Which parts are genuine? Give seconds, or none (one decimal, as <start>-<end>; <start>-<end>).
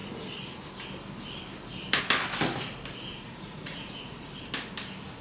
0.0-3.1; 4.3-5.2